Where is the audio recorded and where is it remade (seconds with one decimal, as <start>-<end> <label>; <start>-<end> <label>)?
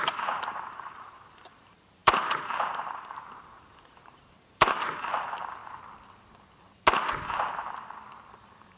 0.0-5.6 remade; 5.6-8.3 recorded; 8.3-8.8 remade